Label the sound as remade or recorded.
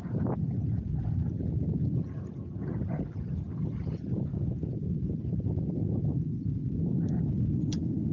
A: recorded